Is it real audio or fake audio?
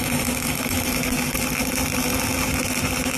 real